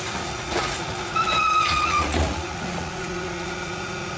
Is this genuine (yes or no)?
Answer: no